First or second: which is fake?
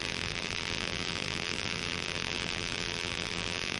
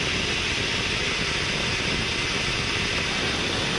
first